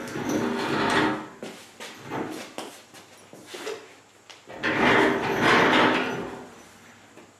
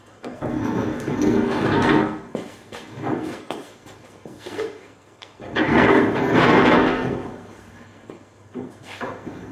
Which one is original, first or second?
first